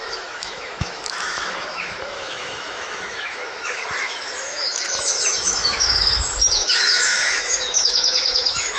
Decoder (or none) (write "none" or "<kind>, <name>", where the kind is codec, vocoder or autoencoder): autoencoder, DAC-VAE